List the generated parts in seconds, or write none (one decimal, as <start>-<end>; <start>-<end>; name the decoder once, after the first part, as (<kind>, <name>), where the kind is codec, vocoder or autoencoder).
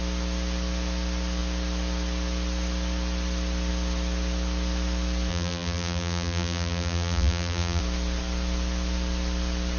5.3-7.8 (vocoder, BigVGAN v2)